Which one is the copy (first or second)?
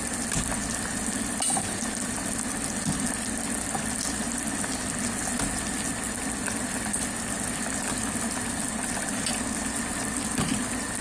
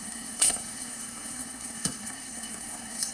second